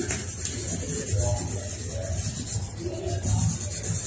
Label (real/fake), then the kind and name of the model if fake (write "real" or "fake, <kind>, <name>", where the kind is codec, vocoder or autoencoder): real